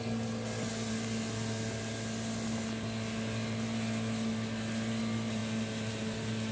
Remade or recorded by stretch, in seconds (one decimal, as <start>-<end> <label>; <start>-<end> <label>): 0.0-6.5 recorded